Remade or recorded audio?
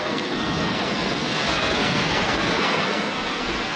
remade